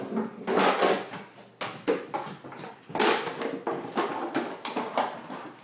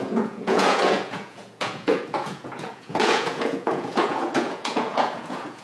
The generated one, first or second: second